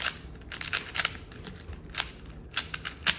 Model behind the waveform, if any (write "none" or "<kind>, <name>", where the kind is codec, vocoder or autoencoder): none